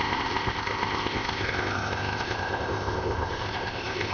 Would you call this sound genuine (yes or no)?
no